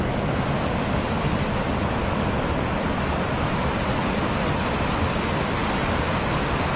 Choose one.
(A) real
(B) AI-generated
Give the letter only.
A